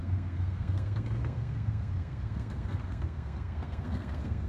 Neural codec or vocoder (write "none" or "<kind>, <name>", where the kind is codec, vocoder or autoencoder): codec, SNAC